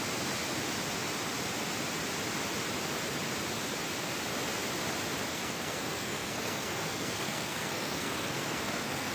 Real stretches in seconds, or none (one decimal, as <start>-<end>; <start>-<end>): 0.0-5.3